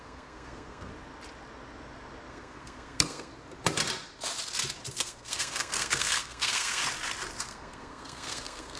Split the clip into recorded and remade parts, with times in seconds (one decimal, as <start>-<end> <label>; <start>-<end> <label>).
0.0-0.9 remade; 0.9-2.3 recorded; 2.3-3.3 remade; 3.3-4.9 recorded; 4.9-6.8 remade; 6.8-7.4 recorded; 7.4-8.8 remade